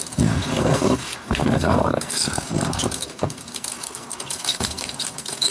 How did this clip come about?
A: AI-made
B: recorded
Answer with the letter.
A